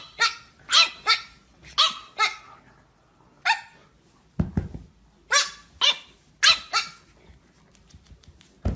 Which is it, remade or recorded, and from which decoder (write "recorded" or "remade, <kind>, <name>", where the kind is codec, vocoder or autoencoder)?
recorded